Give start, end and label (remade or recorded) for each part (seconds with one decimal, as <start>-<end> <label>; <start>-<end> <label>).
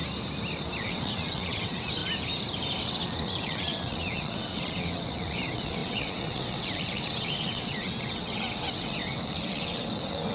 0.0-0.8 recorded; 0.8-2.0 remade; 2.0-2.8 recorded; 2.8-10.3 remade